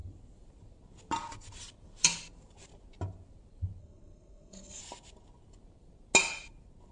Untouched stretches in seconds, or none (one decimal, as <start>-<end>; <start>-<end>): 0.0-3.8; 4.8-6.9